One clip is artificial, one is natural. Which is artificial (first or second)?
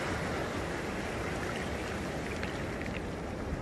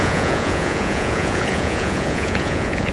second